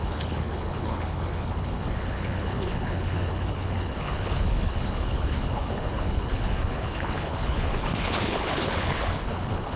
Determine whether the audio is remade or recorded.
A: remade